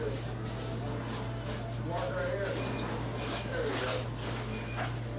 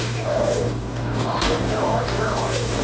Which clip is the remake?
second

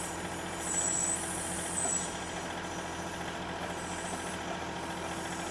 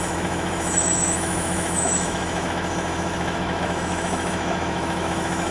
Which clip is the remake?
second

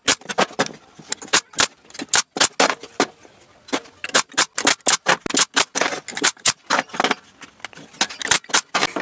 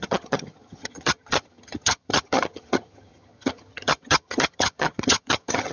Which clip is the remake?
second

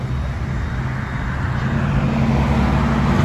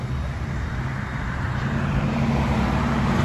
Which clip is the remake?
second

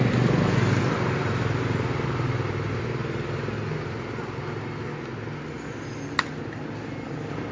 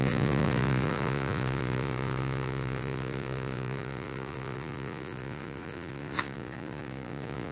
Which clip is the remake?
second